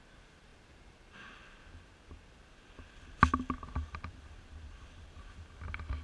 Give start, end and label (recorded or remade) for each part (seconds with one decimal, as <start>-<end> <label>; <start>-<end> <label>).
0.0-6.0 recorded